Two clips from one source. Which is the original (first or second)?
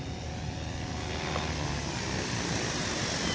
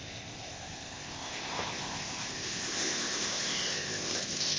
first